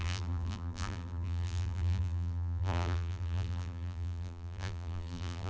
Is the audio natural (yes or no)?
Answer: no